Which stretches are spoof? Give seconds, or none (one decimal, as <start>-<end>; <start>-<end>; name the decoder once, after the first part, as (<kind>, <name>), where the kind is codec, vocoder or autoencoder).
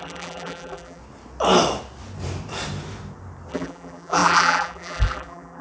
0.0-1.0 (vocoder, BigVGAN v2); 3.5-5.6